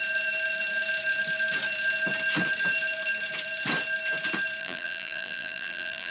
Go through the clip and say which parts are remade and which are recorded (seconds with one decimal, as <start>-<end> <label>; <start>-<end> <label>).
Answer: 0.0-4.6 recorded; 4.6-6.1 remade